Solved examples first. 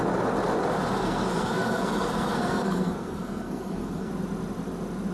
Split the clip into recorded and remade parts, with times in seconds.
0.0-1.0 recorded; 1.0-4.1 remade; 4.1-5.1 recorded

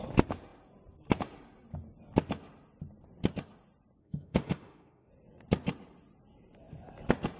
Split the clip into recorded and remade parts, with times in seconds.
0.0-4.0 recorded; 4.0-5.1 remade; 5.1-7.4 recorded

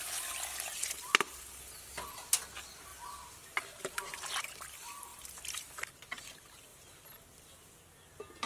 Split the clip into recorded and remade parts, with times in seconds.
0.0-8.5 recorded

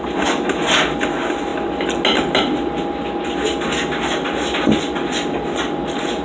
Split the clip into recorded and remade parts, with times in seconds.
0.0-6.2 recorded

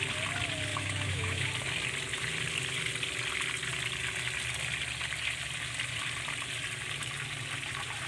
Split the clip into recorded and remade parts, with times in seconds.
0.0-0.7 recorded; 0.7-1.5 remade; 1.5-8.1 recorded

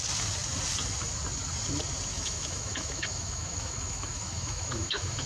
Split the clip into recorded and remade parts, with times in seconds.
0.0-2.1 recorded; 2.1-5.3 remade

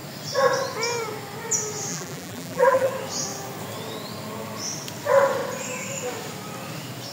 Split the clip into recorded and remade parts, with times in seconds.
0.0-1.9 recorded; 1.9-2.9 remade; 2.9-7.1 recorded